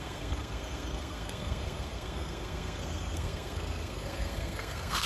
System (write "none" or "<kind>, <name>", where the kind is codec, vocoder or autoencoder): codec, SNAC